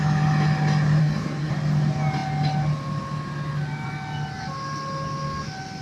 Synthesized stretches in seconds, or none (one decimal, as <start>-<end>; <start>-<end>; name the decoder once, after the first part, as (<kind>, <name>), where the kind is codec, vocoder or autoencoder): 1.0-1.5 (codec, SNAC)